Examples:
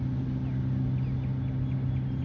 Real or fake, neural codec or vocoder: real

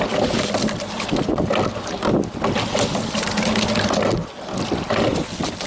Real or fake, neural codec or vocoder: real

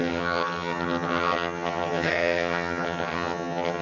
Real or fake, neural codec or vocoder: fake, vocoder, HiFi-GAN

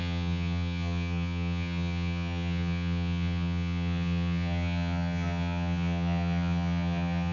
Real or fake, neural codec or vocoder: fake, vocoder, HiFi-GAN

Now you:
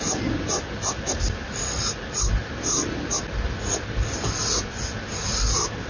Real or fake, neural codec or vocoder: real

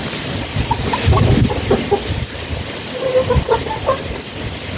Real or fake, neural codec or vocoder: real